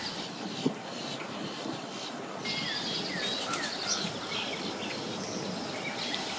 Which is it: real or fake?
real